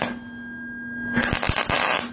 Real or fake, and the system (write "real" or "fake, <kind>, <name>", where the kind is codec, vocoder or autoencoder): real